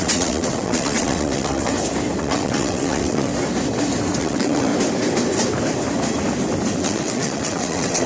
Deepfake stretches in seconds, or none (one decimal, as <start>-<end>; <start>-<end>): 0.0-1.7; 2.2-3.3; 4.2-4.7; 6.8-8.1